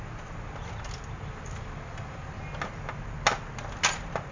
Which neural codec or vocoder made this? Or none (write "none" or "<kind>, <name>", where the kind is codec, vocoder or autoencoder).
none